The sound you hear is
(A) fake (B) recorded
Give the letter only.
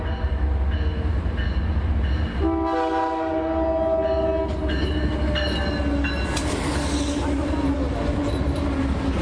B